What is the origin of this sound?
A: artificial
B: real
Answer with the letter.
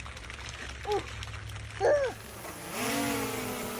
B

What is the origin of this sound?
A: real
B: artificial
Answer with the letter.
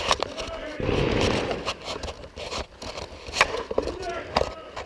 B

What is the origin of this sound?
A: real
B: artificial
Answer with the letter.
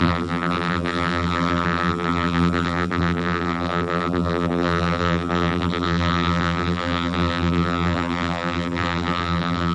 B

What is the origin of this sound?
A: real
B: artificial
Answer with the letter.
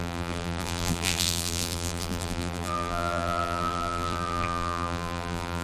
B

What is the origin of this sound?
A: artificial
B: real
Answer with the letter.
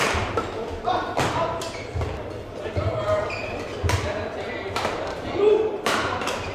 A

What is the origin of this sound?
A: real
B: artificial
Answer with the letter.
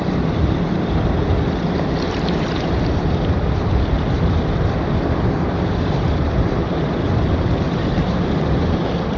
B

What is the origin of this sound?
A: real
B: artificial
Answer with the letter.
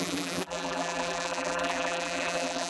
B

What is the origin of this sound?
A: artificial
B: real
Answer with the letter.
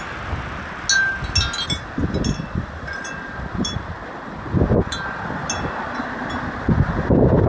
B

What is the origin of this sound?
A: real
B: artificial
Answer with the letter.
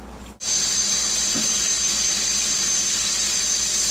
A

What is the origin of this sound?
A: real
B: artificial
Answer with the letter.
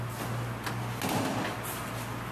A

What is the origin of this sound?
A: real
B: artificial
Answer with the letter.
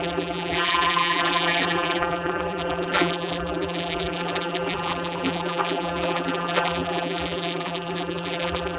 B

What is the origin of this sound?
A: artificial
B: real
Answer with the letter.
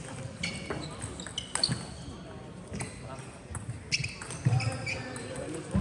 B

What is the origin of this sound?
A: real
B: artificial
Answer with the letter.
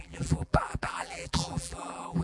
B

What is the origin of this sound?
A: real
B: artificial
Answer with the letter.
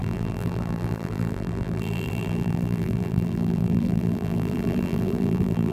B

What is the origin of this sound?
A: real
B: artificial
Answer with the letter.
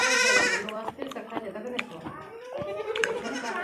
B